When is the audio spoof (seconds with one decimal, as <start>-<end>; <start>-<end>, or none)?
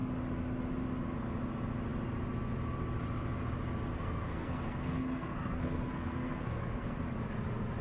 3.9-7.0